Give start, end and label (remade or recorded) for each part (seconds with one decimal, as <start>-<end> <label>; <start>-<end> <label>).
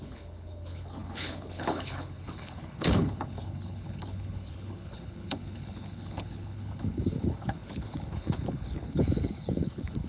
0.0-10.1 remade